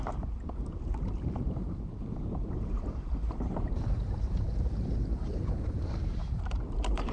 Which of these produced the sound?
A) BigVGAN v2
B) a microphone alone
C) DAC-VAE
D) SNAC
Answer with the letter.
A